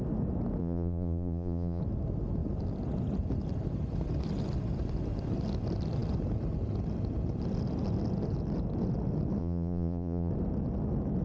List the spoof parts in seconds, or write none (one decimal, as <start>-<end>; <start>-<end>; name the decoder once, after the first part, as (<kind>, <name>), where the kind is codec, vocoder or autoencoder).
0.6-1.8 (vocoder, Vocos); 9.4-10.3